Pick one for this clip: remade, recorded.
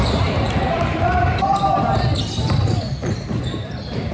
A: remade